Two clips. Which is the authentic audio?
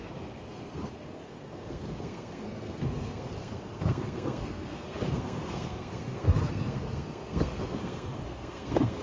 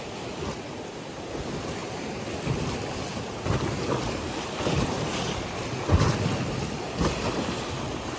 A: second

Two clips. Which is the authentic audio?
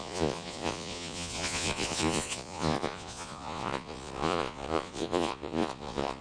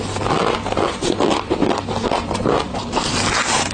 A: second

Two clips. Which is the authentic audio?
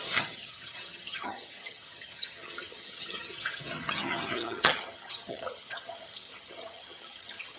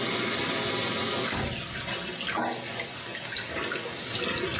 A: second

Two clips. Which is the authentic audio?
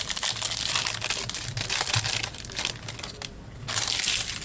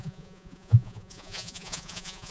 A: first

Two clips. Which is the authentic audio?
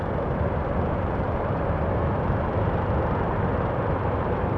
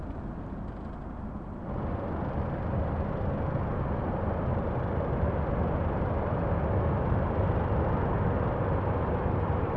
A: second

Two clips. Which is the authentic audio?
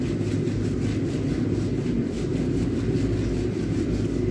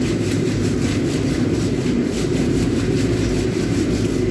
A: first